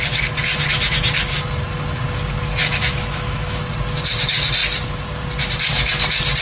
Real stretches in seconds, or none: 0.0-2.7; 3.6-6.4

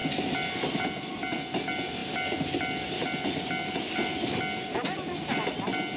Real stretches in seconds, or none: 0.0-6.0

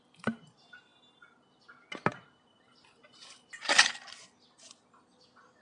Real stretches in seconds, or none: 0.9-2.3